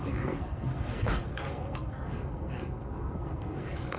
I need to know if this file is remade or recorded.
remade